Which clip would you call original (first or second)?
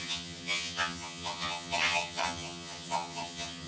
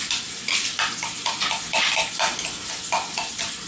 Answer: second